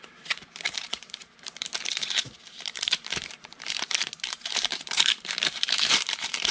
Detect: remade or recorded remade